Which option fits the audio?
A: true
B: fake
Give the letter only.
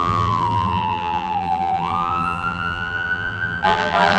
B